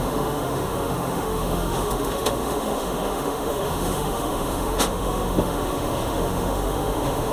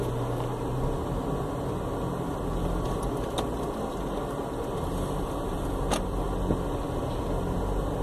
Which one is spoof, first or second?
first